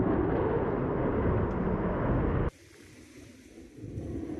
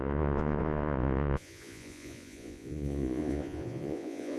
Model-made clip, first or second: second